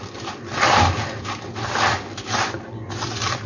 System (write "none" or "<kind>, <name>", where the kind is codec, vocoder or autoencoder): none